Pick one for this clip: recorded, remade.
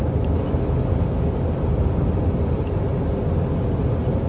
recorded